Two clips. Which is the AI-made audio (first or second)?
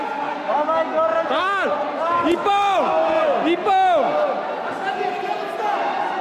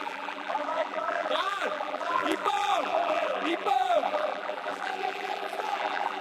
second